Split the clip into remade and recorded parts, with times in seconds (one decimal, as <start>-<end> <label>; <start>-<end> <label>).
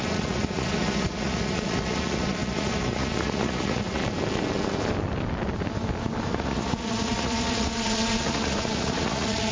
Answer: 0.0-4.0 remade; 4.0-6.3 recorded; 6.3-9.5 remade